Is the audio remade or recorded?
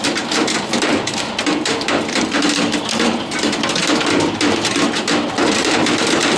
remade